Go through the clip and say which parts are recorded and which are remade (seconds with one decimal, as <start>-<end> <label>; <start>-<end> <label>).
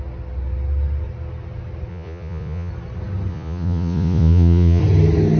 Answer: 0.0-1.9 recorded; 1.9-2.7 remade; 2.7-3.3 recorded; 3.3-4.8 remade; 4.8-5.4 recorded